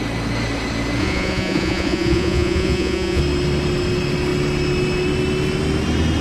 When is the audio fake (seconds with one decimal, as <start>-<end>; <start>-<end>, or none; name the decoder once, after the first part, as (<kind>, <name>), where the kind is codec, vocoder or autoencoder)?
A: 1.0-3.2 (vocoder, Vocos)